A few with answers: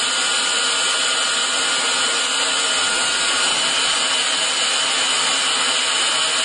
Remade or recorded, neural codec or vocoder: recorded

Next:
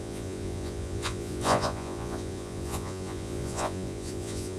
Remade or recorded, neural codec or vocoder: remade, vocoder, Vocos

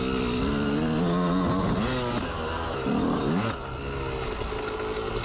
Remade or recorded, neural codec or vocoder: recorded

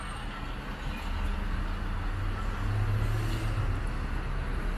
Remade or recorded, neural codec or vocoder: recorded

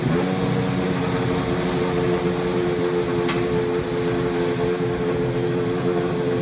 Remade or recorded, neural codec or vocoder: recorded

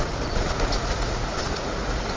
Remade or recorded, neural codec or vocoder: remade, vocoder, Vocos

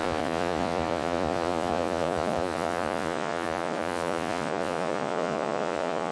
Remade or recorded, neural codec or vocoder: remade, vocoder, Vocos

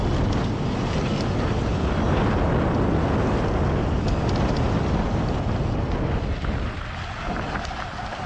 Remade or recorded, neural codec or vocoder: recorded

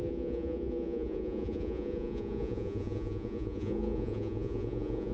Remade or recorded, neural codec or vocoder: remade, vocoder, Vocos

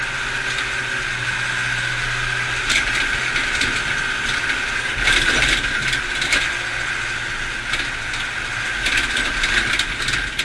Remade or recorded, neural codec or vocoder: recorded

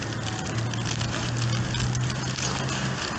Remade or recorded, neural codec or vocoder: recorded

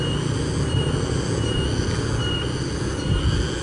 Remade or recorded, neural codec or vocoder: recorded